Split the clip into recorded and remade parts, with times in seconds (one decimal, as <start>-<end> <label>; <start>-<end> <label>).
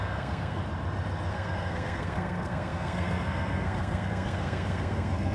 0.0-0.6 remade; 0.6-1.3 recorded; 1.3-5.3 remade